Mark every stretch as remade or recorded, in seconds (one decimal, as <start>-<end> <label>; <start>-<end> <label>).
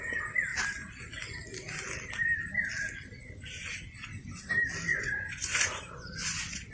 0.0-4.9 recorded; 4.9-6.7 remade